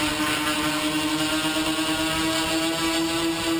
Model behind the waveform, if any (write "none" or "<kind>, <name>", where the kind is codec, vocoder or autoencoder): none